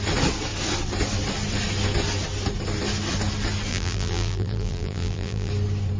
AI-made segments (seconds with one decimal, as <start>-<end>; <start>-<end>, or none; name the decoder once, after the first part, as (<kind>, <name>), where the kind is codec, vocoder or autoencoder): 3.7-5.5 (vocoder, BigVGAN v2)